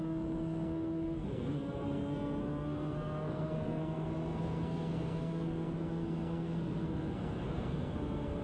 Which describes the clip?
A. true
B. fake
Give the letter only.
B